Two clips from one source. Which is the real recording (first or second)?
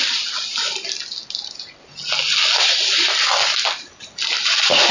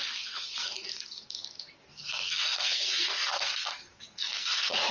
first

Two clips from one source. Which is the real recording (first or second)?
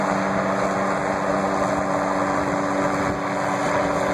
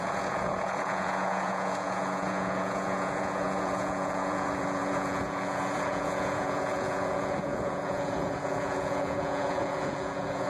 first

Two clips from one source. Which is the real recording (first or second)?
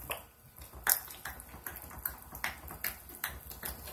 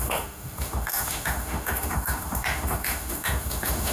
first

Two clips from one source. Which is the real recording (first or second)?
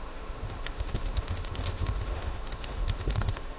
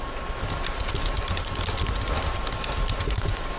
second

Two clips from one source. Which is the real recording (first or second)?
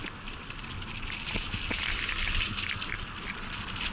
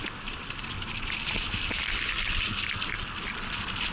first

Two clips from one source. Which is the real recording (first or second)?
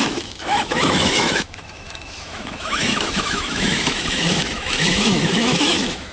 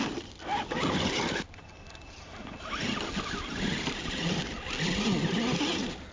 second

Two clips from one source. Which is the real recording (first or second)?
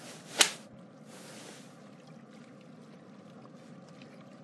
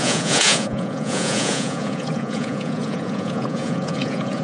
first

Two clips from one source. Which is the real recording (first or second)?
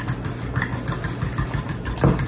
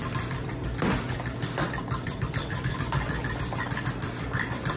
first